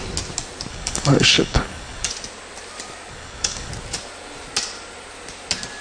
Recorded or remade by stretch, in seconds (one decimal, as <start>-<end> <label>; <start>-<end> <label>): 0.0-0.7 recorded; 0.7-2.1 remade; 2.1-3.1 recorded; 3.1-3.7 remade; 3.7-5.8 recorded